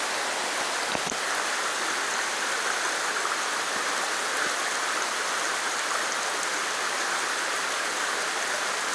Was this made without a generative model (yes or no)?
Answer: yes